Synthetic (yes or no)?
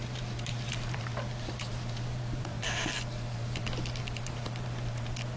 yes